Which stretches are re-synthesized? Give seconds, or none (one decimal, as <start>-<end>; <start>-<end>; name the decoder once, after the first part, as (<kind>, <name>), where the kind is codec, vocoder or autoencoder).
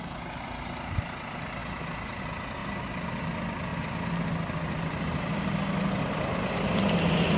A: none